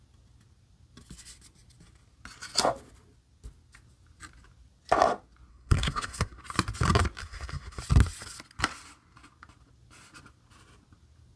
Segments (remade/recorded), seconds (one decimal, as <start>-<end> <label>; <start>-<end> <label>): 0.0-5.5 recorded; 5.5-6.4 remade; 6.4-7.2 recorded; 7.2-7.8 remade; 7.8-11.4 recorded